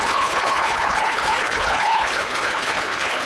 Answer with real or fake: fake